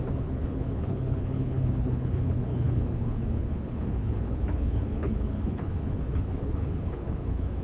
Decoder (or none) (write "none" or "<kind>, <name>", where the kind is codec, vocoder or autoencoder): codec, HILCodec